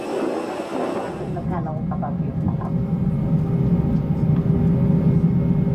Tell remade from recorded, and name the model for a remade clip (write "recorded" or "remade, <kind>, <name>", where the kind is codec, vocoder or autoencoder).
recorded